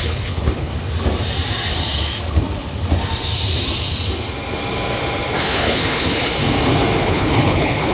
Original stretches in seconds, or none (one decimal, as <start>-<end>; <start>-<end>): 0.7-5.4; 6.3-7.0